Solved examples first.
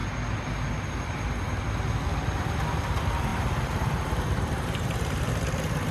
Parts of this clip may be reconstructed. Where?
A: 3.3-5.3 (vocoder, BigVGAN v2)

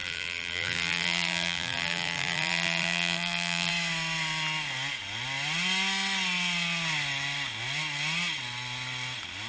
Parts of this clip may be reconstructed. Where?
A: 0.0-3.7 (vocoder, BigVGAN v2)

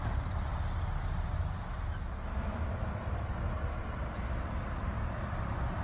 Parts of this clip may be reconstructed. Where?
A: none

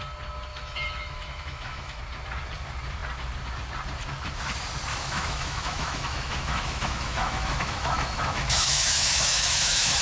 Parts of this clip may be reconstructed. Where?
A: 0.5-2.0 (autoencoder, DAC-VAE); 4.9-10.0

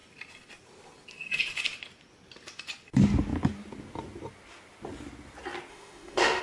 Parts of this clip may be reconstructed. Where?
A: 5.7-6.4 (autoencoder, DAC-VAE)

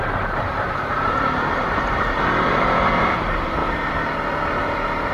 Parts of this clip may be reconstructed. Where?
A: 0.0-3.6 (vocoder, BigVGAN v2)

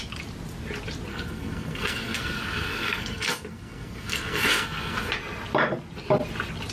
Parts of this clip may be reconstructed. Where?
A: 1.1-5.1 (codec, SNAC)